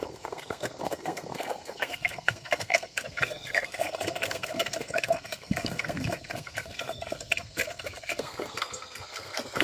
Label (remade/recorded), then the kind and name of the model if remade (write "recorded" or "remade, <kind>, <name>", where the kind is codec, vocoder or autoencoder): remade, codec, SNAC